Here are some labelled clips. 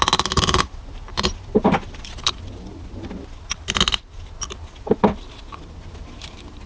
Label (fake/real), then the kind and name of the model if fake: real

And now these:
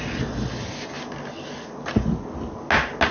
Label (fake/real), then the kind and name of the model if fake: real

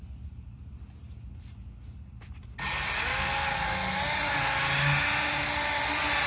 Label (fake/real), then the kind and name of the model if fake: real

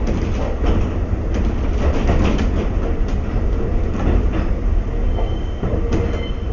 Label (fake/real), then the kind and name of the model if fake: real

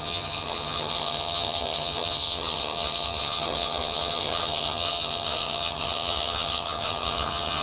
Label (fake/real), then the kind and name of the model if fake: fake, vocoder, HiFi-GAN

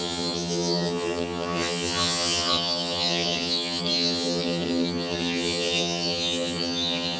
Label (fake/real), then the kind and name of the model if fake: fake, vocoder, HiFi-GAN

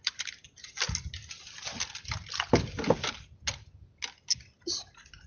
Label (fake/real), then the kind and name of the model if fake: real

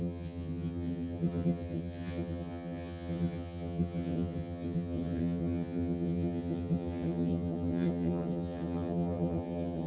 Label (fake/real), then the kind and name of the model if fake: fake, vocoder, HiFi-GAN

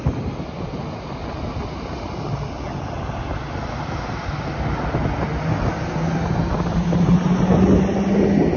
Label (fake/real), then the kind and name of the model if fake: real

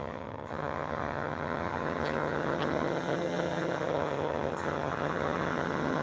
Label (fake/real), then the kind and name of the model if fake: fake, vocoder, HiFi-GAN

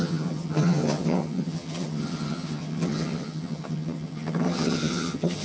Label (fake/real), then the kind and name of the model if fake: fake, vocoder, HiFi-GAN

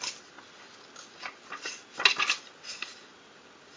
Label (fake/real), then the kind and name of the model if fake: real